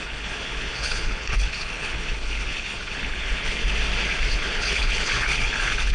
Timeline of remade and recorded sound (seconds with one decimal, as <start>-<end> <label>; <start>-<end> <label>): 0.0-3.6 remade; 3.6-4.3 recorded; 4.3-5.9 remade